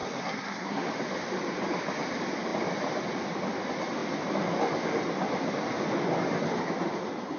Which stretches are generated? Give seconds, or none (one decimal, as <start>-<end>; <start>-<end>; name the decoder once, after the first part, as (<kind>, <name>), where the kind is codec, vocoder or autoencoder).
0.0-0.9 (codec, SNAC)